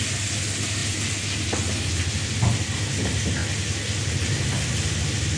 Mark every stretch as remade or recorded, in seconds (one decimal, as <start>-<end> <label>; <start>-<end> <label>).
0.0-5.4 recorded